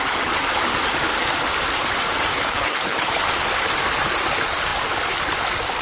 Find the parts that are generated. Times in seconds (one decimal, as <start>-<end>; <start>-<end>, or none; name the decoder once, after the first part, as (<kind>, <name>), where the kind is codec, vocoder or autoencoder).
2.3-3.1 (codec, HILCodec)